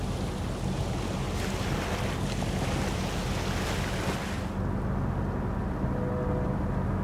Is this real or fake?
real